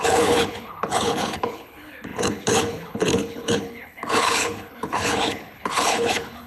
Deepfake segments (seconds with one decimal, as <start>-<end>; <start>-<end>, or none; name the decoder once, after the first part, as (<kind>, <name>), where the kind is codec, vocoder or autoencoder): 0.0-6.5 (codec, HILCodec)